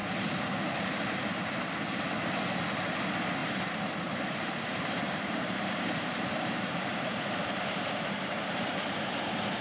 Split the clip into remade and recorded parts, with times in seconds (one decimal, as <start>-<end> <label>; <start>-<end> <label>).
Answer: 0.0-3.4 recorded; 3.4-8.6 remade; 8.6-9.6 recorded